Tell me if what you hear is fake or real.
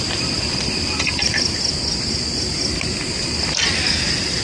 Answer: real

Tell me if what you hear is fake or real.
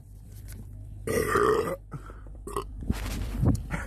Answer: fake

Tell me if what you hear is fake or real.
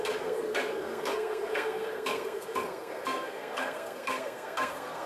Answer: fake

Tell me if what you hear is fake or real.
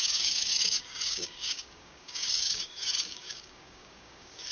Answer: fake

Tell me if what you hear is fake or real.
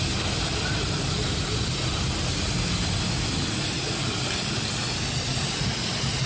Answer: real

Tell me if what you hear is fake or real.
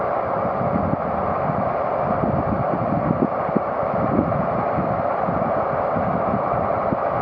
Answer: real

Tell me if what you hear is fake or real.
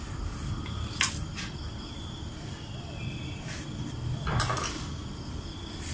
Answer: real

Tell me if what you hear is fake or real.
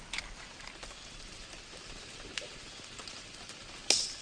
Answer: real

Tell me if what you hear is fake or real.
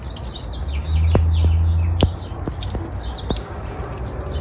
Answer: real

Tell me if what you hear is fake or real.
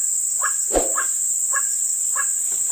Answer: fake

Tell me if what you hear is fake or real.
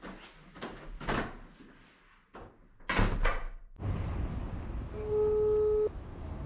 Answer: real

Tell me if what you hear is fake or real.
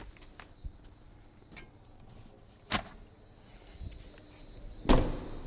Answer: real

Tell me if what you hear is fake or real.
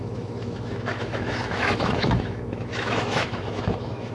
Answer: fake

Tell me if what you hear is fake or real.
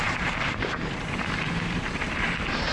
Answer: fake